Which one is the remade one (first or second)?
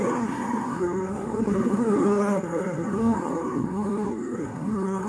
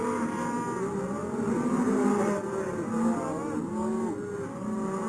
first